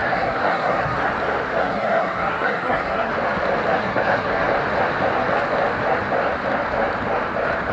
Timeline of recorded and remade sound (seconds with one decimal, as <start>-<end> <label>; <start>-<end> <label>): 0.0-1.0 remade; 1.0-1.6 recorded; 1.6-3.1 remade; 3.1-3.8 recorded; 3.8-4.5 remade; 4.5-7.7 recorded